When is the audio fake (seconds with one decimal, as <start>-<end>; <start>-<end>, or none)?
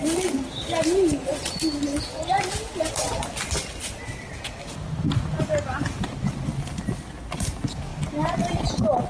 none